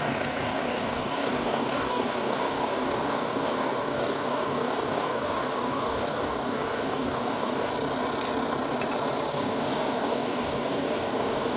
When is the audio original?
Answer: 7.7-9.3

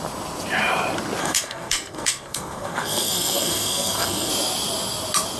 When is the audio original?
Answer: 0.0-1.2; 4.3-5.4

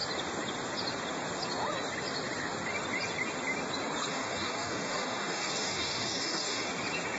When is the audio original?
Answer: 0.0-4.1; 6.7-7.2

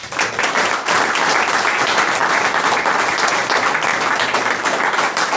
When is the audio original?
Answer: 0.0-5.4

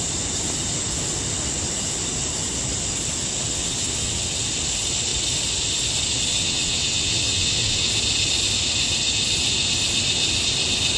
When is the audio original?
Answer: 0.0-3.5; 4.4-6.3; 7.9-11.0